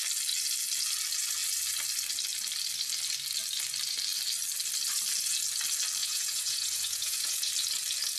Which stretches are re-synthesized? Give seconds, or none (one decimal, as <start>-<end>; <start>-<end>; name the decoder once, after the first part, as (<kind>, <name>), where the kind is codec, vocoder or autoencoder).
6.0-7.5 (vocoder, Vocos)

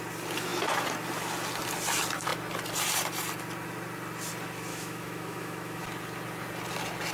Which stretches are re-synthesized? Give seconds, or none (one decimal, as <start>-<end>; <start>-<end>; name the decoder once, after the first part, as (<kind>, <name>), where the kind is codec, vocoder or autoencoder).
4.7-5.8 (autoencoder, DAC-VAE)

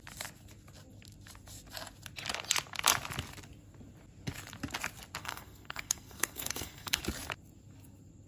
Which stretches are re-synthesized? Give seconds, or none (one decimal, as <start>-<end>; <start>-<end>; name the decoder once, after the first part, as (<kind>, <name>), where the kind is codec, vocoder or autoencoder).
5.2-7.0 (codec, SNAC)

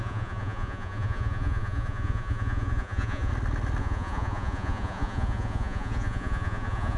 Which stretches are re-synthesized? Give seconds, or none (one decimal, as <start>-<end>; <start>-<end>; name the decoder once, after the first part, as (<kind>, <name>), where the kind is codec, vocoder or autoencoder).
0.0-3.3 (vocoder, Vocos); 3.8-7.0